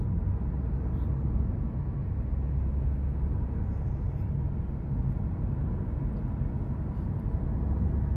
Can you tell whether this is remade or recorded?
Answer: recorded